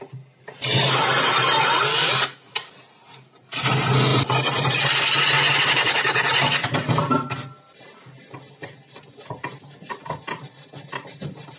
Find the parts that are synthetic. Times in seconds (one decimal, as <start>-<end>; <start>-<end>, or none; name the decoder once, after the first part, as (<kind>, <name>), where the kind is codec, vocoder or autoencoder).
none